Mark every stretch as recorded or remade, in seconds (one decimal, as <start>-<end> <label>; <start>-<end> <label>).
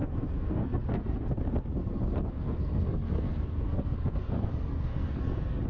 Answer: 0.0-5.7 remade